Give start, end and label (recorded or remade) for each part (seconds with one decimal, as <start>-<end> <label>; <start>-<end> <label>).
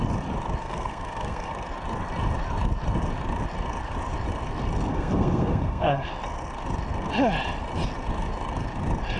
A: 0.0-0.6 recorded; 0.6-1.5 remade; 1.5-4.9 recorded; 4.9-6.1 remade; 6.1-9.2 recorded